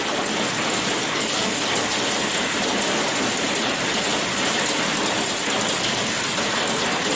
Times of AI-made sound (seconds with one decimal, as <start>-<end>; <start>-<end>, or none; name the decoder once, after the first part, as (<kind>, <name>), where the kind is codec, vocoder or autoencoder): 1.0-1.7 (codec, DAC)